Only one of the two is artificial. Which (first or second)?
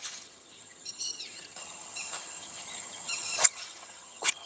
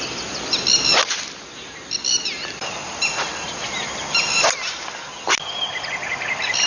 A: first